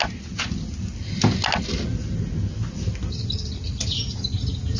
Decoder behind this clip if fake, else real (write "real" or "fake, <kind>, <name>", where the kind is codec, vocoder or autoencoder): real